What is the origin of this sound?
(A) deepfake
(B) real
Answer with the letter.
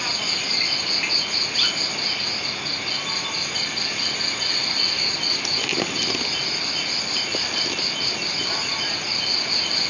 B